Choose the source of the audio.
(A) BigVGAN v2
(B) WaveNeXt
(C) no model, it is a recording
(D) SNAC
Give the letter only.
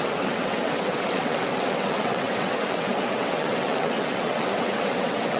B